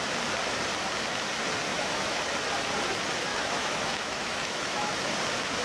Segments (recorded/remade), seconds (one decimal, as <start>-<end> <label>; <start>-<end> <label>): 0.0-1.7 recorded; 1.7-2.2 remade; 2.2-3.3 recorded; 3.3-4.9 remade; 4.9-5.6 recorded